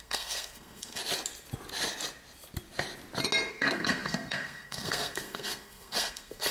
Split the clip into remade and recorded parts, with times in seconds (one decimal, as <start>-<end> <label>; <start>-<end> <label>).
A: 0.0-1.0 remade; 1.0-3.5 recorded; 3.5-6.5 remade